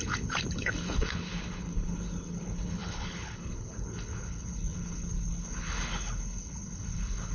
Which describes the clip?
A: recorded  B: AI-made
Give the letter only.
B